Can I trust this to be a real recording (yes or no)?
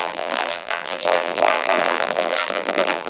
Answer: no